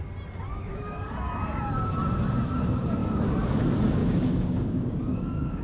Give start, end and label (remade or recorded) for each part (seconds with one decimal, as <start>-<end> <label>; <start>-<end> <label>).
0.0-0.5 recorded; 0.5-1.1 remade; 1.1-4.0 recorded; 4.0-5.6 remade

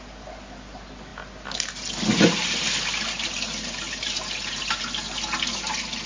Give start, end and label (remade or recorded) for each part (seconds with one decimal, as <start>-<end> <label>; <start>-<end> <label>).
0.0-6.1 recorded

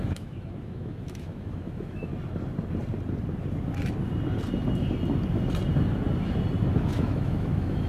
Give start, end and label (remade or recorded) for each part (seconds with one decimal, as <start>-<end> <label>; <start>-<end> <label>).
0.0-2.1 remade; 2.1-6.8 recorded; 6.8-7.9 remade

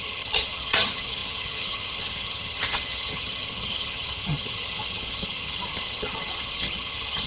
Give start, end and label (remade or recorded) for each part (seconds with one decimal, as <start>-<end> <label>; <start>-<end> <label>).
0.0-7.3 remade

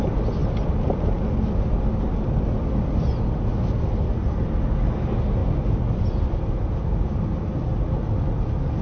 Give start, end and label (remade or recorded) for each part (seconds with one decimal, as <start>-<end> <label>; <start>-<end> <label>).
0.0-8.8 recorded

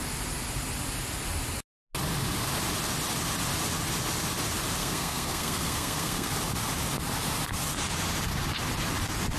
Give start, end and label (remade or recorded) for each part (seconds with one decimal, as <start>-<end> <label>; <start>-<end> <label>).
0.0-4.8 recorded; 4.8-6.3 remade; 6.3-9.4 recorded

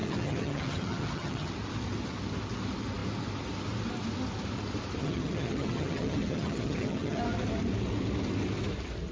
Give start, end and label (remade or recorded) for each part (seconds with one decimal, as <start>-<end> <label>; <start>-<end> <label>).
0.0-1.5 remade; 1.5-5.0 recorded; 5.0-7.2 remade; 7.2-9.1 recorded

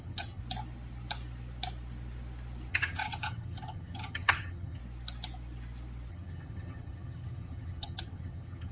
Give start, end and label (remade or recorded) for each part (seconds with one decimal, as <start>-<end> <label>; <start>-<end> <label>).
0.0-0.4 remade; 0.4-2.7 recorded; 2.7-4.8 remade; 4.8-6.1 recorded; 6.1-8.7 remade